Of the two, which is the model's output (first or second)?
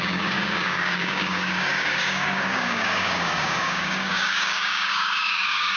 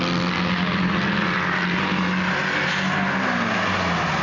first